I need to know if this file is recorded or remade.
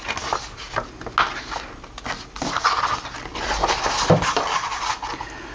recorded